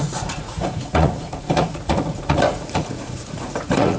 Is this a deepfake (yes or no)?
yes